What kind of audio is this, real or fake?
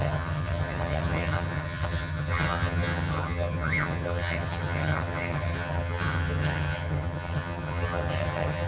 fake